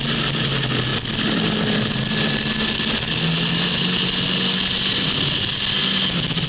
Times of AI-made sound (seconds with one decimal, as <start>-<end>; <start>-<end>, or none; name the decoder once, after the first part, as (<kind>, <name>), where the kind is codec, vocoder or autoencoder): none